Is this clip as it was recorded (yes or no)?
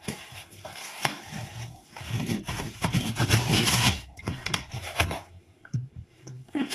no